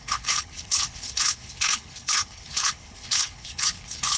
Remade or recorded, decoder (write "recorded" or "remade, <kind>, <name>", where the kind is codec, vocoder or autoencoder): remade, codec, HILCodec